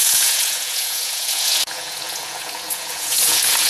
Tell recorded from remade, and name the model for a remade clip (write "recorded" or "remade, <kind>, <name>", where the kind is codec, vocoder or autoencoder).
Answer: remade, vocoder, Vocos